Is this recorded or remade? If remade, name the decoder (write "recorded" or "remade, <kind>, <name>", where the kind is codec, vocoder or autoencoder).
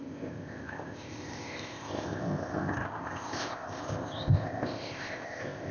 remade, codec, ZipCodec